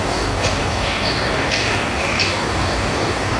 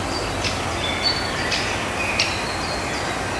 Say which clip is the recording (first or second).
second